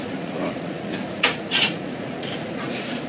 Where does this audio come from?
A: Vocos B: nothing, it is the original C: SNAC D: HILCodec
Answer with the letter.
A